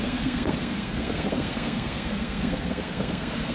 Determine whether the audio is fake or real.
fake